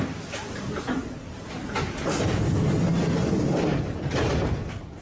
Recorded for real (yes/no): yes